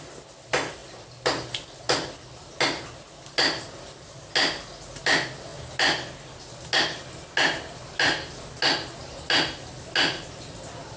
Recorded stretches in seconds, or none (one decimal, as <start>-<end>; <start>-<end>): 0.0-11.0